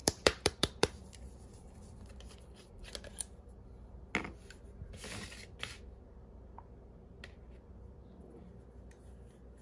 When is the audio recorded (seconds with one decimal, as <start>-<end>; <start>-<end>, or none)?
1.7-9.6